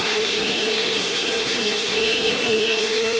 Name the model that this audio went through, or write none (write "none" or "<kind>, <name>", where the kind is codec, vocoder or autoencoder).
codec, SNAC